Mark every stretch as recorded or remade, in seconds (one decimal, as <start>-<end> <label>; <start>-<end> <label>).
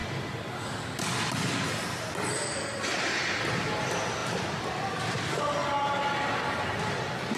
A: 0.0-4.2 recorded; 4.2-5.4 remade; 5.4-7.4 recorded